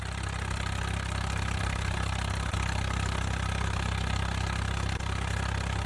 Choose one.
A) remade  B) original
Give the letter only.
B